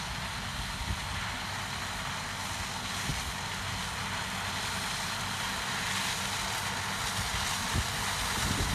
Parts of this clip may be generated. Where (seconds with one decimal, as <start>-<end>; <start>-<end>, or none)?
none